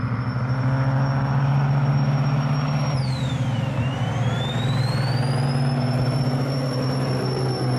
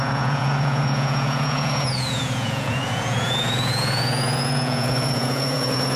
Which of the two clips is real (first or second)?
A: first